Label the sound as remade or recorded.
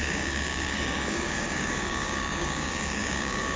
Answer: remade